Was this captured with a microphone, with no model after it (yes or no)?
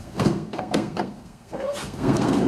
no